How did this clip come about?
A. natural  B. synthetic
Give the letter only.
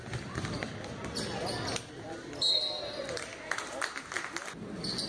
A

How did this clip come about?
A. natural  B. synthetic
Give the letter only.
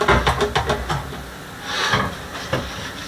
A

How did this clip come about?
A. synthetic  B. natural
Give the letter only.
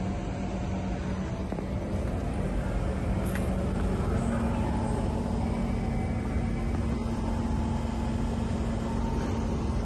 B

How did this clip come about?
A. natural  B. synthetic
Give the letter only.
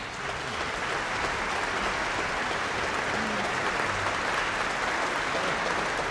A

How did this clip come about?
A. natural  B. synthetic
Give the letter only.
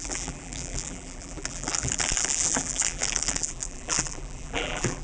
B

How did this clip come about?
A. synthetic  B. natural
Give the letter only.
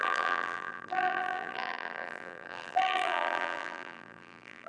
A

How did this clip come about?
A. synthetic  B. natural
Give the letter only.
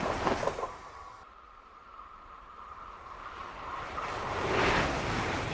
A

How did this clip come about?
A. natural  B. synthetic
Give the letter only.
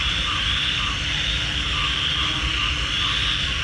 B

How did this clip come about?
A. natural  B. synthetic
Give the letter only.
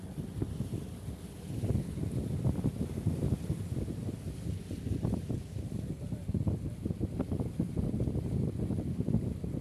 A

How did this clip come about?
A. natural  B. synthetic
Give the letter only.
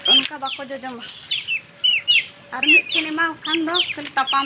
A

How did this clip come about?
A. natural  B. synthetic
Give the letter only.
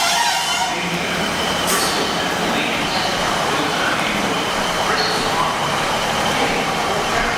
B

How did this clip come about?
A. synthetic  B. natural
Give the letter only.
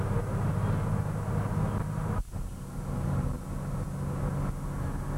B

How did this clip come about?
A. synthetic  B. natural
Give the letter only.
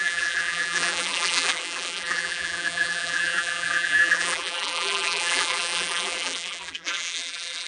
A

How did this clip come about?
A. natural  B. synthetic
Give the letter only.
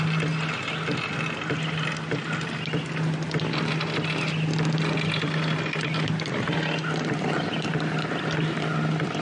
A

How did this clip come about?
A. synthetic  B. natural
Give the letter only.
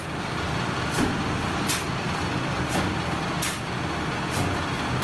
B